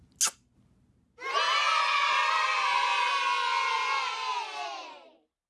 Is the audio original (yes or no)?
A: yes